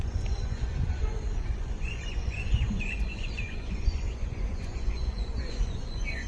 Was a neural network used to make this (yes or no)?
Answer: yes